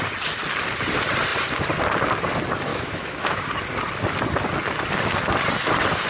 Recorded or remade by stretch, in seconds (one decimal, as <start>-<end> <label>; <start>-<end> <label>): 0.0-2.7 recorded; 2.7-3.4 remade; 3.4-6.1 recorded